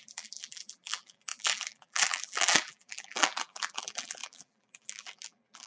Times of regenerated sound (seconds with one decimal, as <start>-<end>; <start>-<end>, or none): 0.0-5.7